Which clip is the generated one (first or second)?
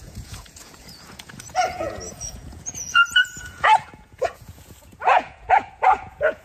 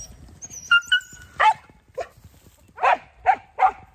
first